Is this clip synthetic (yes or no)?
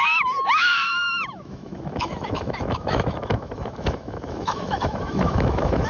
yes